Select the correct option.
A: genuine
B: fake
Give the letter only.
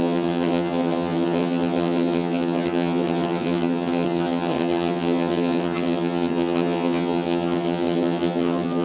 B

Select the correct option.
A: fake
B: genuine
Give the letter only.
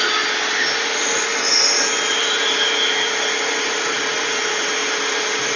B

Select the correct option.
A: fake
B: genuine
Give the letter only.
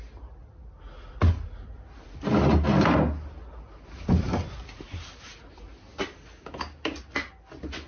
B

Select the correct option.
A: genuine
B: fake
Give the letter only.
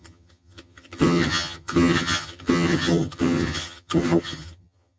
B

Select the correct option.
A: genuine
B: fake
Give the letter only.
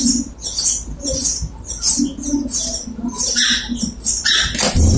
A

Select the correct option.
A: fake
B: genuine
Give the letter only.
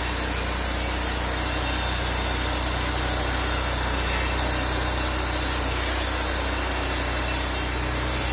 B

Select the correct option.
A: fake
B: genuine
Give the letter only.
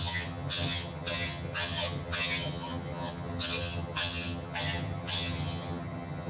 A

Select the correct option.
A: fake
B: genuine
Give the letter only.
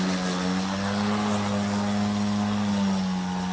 B